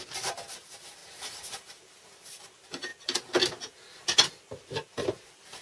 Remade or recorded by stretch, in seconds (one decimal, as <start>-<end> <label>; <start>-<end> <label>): 0.0-2.9 remade; 2.9-4.6 recorded; 4.6-5.6 remade